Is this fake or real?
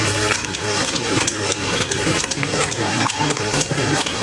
fake